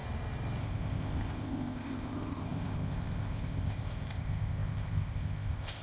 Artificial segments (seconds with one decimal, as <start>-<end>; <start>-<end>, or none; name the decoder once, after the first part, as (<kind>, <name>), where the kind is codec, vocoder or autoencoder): 0.6-5.8 (codec, ZipCodec)